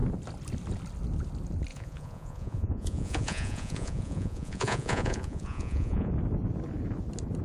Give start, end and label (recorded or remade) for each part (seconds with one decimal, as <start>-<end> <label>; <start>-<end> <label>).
0.0-1.7 recorded; 1.7-6.1 remade; 6.1-7.4 recorded